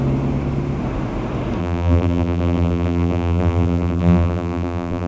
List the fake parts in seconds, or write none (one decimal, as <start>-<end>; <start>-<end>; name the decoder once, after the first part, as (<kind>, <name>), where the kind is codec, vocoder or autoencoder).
1.6-5.1 (vocoder, BigVGAN v2)